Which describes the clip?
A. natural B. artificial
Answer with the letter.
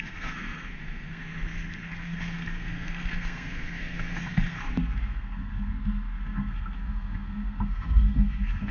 B